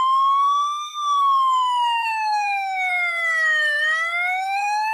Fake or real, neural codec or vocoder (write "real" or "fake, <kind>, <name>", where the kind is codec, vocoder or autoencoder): fake, codec, SNAC